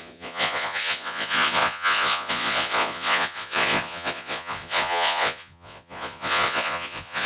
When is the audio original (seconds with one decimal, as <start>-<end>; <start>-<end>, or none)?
none